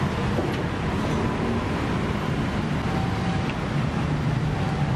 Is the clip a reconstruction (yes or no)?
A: no